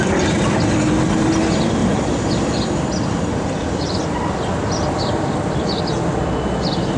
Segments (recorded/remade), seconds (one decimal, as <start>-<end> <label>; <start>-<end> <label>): 0.0-1.8 recorded; 1.8-5.8 remade; 5.8-7.0 recorded